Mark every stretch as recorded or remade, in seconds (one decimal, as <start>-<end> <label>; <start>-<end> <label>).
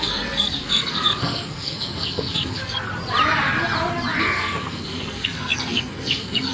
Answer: 0.0-2.9 remade; 2.9-4.2 recorded; 4.2-6.5 remade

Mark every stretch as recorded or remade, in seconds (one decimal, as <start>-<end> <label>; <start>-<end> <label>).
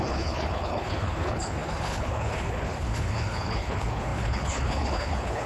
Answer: 0.0-5.5 remade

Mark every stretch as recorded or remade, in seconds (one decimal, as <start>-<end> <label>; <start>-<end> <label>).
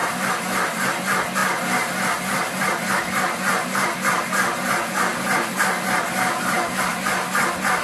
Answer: 0.0-7.8 recorded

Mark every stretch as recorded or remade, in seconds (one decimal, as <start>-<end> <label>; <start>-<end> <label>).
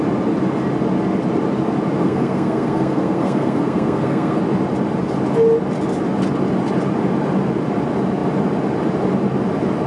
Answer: 0.0-2.0 recorded; 2.0-4.4 remade; 4.4-9.9 recorded